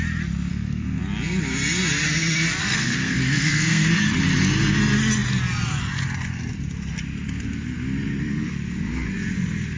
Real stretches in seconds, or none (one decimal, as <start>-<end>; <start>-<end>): 0.0-0.5; 1.0-2.6; 3.9-9.8